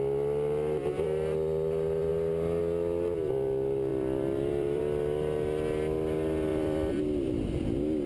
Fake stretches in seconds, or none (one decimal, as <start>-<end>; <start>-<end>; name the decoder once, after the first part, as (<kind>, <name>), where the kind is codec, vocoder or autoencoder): 3.9-4.8 (vocoder, BigVGAN v2); 6.5-7.0